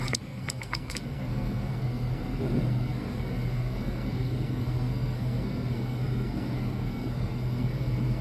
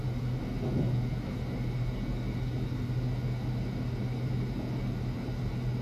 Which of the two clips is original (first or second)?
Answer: second